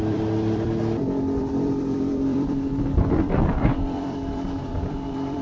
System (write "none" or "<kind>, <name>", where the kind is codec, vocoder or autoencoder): vocoder, BigVGAN v2